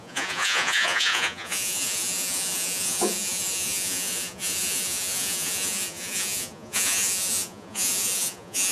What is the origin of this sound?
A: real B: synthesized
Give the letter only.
B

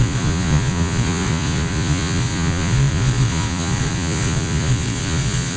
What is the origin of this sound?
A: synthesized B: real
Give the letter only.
A